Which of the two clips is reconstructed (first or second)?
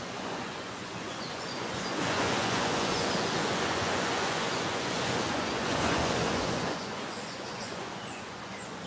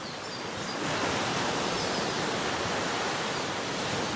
first